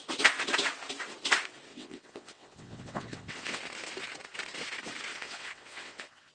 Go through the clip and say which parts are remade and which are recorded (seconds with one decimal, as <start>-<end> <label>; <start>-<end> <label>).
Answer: 0.0-1.7 recorded; 1.7-3.6 remade; 3.6-5.1 recorded; 5.1-6.3 remade